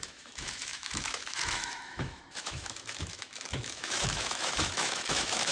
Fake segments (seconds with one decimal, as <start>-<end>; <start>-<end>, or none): 0.0-5.5